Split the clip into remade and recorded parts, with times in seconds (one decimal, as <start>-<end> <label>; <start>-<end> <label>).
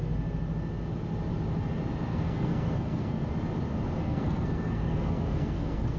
0.0-2.1 recorded; 2.1-3.3 remade; 3.3-4.0 recorded; 4.0-6.0 remade